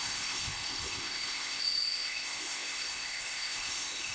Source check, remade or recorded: remade